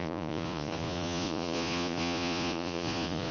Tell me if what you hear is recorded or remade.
remade